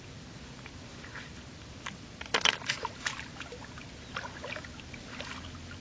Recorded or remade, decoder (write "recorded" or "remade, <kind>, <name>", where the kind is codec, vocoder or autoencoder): recorded